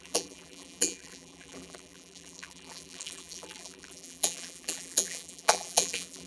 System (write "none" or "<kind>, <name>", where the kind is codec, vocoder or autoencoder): vocoder, BigVGAN v2